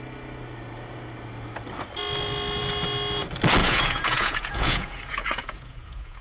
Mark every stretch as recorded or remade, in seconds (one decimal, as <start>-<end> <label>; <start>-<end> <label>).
0.0-3.6 recorded; 3.6-6.2 remade